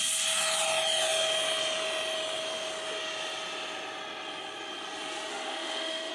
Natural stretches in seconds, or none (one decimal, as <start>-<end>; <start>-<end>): 0.0-5.3